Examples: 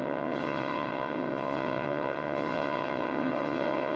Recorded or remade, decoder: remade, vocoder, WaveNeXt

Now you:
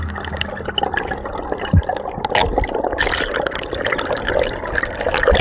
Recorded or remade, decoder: recorded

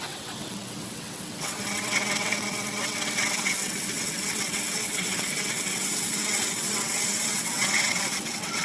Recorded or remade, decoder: remade, vocoder, WaveNeXt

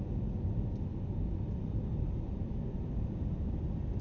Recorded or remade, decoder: recorded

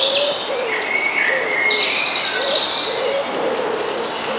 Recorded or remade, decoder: recorded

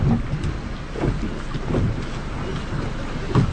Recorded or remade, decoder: recorded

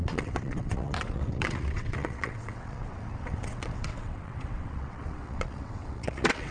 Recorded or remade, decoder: remade, vocoder, WaveNeXt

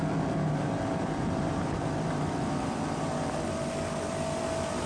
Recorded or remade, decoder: recorded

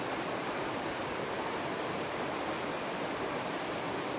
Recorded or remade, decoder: recorded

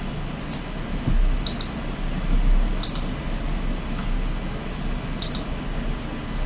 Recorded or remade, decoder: recorded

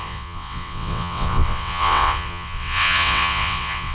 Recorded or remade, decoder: remade, vocoder, WaveNeXt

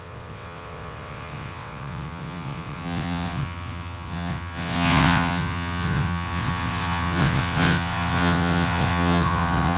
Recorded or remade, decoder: remade, vocoder, WaveNeXt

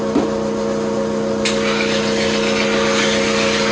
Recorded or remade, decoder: recorded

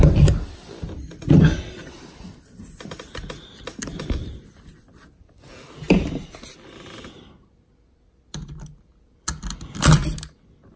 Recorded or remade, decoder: recorded